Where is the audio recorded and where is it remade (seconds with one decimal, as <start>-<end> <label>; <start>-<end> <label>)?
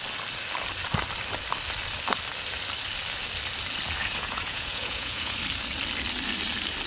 0.0-4.0 recorded; 4.0-5.4 remade; 5.4-6.9 recorded